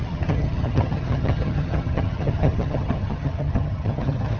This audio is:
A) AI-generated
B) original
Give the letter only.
A